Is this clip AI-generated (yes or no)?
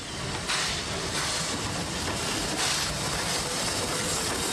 no